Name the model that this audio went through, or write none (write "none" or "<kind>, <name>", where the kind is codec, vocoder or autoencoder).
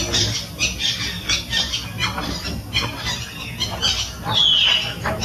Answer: none